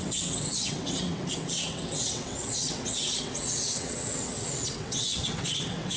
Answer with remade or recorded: remade